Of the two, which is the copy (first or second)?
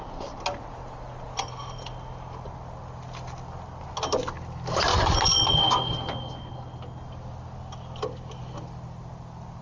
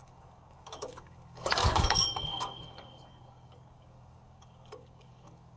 second